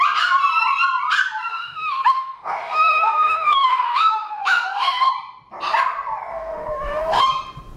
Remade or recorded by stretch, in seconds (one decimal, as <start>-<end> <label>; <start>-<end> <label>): 0.0-1.5 recorded; 1.5-5.1 remade; 5.1-6.3 recorded; 6.3-7.2 remade; 7.2-7.8 recorded